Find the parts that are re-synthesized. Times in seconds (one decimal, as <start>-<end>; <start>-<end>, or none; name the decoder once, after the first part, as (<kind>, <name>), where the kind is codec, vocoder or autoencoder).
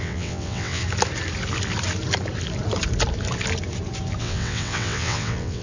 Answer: 0.0-0.8 (vocoder, WaveNeXt); 4.2-5.6